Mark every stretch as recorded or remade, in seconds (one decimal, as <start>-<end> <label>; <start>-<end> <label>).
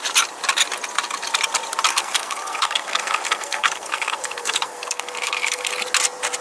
0.0-1.9 recorded; 1.9-5.7 remade; 5.7-6.4 recorded